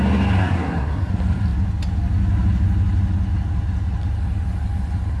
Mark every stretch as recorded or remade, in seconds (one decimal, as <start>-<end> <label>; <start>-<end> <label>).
0.0-0.4 recorded; 0.4-1.1 remade; 1.1-5.2 recorded